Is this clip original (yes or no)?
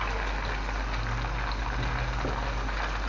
yes